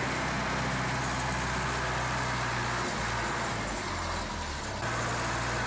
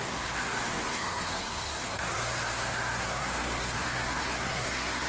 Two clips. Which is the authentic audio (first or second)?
first